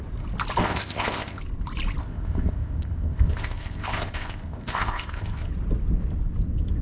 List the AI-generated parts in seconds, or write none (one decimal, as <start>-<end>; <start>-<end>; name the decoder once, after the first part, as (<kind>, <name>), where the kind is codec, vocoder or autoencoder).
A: 0.6-1.4 (codec, ZipCodec); 2.0-5.5